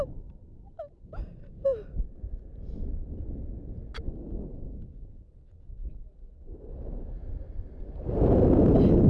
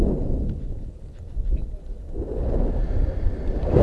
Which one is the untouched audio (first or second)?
first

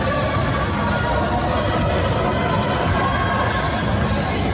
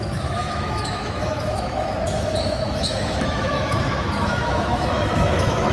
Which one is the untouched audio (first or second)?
first